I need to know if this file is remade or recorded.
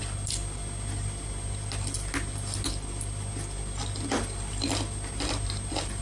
recorded